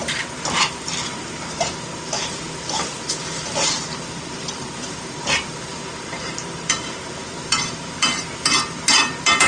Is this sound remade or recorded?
remade